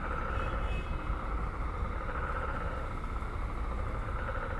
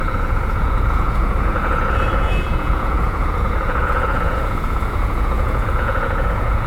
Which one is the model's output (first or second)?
second